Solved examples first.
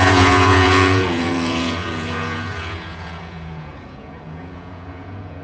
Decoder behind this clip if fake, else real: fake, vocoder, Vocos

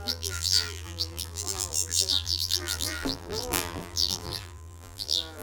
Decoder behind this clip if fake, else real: fake, vocoder, BigVGAN v2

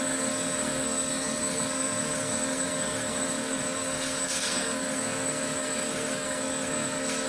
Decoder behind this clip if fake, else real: fake, codec, SNAC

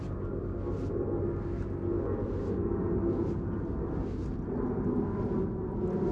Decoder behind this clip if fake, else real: real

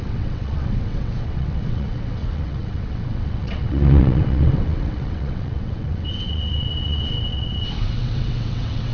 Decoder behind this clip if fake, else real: fake, vocoder, WaveNeXt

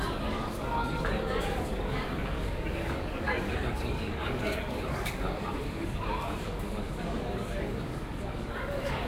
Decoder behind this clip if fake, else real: fake, codec, DAC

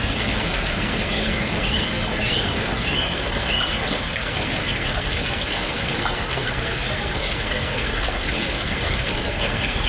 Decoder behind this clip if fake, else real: fake, codec, SNAC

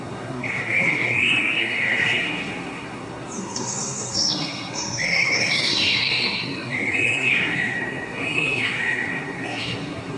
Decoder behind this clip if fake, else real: fake, codec, SNAC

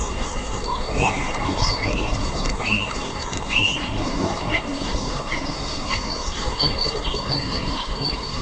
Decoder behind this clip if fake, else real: fake, codec, SNAC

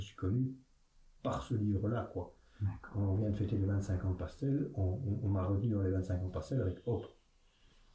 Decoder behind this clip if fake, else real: real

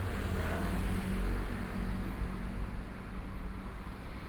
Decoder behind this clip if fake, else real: real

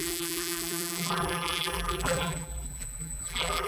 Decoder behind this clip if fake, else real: fake, vocoder, BigVGAN v2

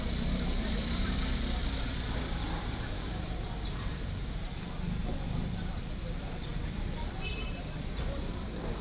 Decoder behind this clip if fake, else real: fake, vocoder, BigVGAN v2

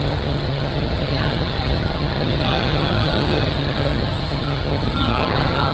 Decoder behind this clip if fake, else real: fake, vocoder, HiFi-GAN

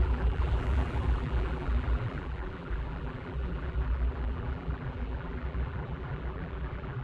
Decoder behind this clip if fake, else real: fake, vocoder, BigVGAN v2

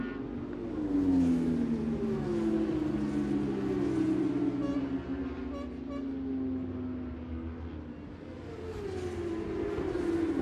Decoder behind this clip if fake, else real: real